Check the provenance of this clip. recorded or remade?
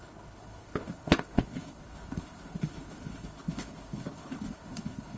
remade